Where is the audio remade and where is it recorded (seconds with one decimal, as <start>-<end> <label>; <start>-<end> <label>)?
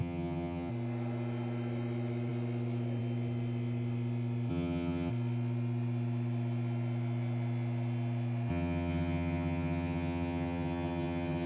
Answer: 0.0-0.7 remade; 0.7-4.5 recorded; 4.5-5.1 remade; 5.1-8.5 recorded; 8.5-11.5 remade